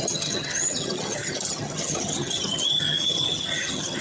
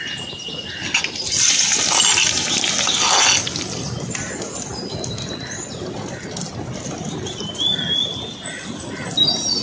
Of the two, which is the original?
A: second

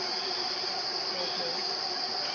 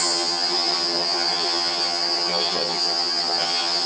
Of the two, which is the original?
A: first